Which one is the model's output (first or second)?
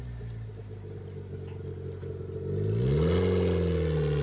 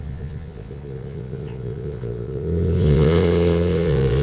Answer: second